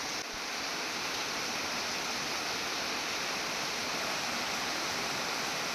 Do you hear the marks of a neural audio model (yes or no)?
no